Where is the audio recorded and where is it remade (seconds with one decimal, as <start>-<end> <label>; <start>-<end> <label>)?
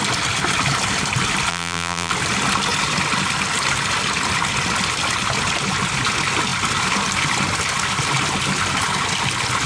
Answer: 0.0-1.5 recorded; 1.5-2.1 remade; 2.1-9.7 recorded